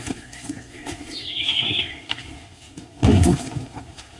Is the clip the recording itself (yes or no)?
no